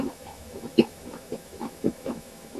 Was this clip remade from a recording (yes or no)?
yes